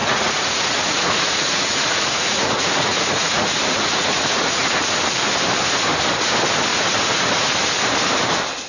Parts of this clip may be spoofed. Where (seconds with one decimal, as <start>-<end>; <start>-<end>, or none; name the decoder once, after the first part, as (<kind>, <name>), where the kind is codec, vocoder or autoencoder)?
0.0-4.9 (vocoder, Vocos); 6.7-7.3